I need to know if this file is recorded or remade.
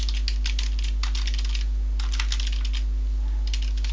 recorded